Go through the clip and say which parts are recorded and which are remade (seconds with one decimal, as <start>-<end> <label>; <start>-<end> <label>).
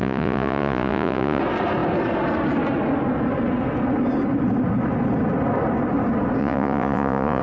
0.0-1.4 remade; 1.4-6.4 recorded; 6.4-7.4 remade